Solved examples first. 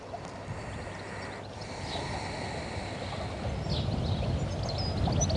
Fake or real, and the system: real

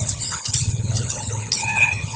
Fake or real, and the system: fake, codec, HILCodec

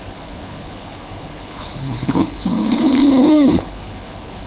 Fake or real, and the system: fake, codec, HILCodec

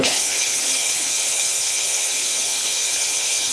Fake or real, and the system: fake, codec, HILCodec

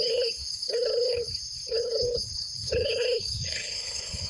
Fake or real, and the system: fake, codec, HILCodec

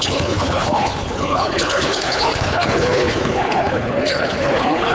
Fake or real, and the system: fake, codec, HILCodec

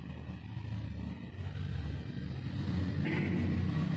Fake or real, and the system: real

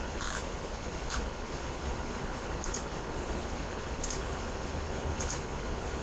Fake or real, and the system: fake, codec, HILCodec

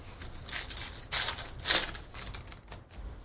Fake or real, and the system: real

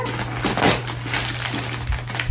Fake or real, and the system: real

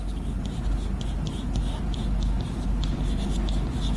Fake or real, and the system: real